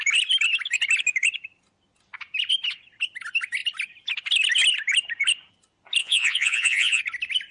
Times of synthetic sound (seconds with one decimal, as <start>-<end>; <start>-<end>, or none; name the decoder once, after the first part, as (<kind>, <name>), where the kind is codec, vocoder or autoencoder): 6.0-7.0 (vocoder, Vocos)